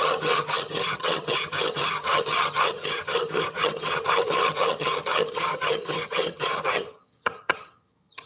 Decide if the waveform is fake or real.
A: fake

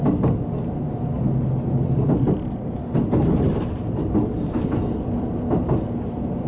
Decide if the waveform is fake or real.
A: real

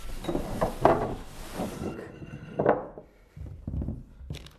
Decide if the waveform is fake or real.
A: fake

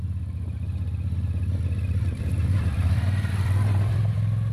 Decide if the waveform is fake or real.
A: fake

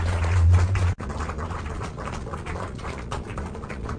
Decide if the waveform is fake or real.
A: fake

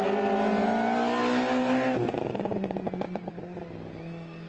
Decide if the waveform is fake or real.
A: real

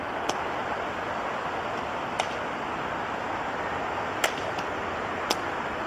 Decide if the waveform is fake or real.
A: real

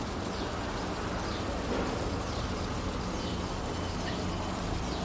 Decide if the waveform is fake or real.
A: real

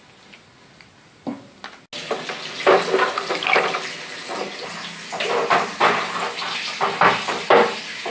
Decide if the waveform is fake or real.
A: real